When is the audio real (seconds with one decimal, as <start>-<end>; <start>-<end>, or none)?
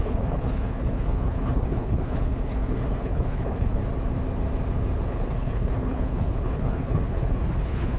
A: 3.8-5.1